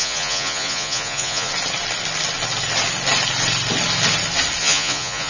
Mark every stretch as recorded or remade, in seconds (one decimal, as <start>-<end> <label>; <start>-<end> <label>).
0.0-1.5 remade; 1.5-4.6 recorded; 4.6-5.3 remade